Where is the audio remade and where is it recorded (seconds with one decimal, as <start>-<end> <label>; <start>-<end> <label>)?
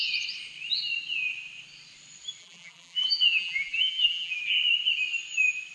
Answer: 0.0-2.4 recorded; 2.4-4.4 remade; 4.4-5.7 recorded